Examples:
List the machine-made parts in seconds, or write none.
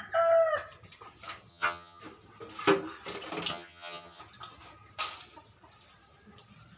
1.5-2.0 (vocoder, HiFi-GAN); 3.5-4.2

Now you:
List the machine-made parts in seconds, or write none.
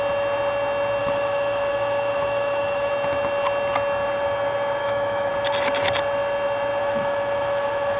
1.0-2.9 (autoencoder, DAC-VAE); 4.8-5.3; 6.8-8.0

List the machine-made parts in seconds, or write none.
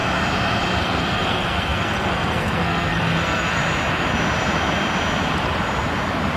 0.8-3.6 (codec, SNAC)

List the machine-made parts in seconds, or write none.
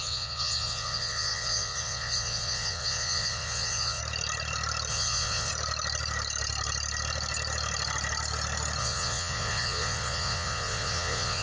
0.0-4.0 (vocoder, Vocos); 4.9-5.5; 8.8-11.4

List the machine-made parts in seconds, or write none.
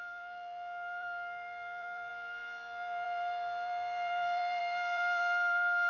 0.0-5.9 (vocoder, BigVGAN v2)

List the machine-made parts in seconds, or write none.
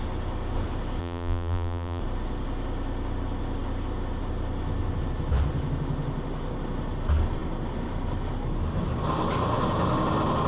1.0-2.0 (vocoder, BigVGAN v2)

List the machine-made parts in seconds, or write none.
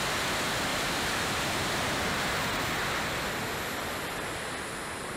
0.7-2.7 (vocoder, BigVGAN v2)